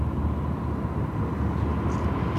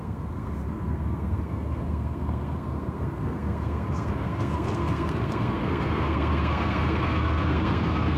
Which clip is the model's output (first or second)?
second